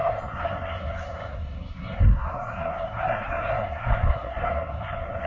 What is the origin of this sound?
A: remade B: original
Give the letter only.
A